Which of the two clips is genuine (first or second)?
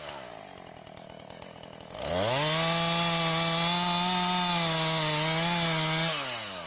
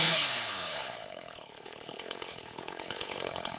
first